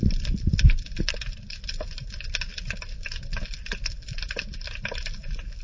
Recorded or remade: recorded